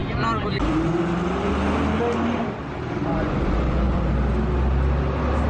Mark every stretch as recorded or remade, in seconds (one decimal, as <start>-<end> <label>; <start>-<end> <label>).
0.0-3.2 recorded; 3.2-4.0 remade; 4.0-5.5 recorded